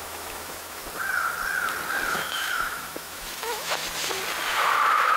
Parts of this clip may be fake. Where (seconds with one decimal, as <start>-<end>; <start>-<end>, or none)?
0.0-0.8; 2.1-3.8; 4.5-5.2